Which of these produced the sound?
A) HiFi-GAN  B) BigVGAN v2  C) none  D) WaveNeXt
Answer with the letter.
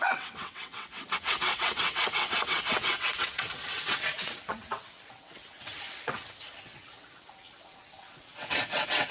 D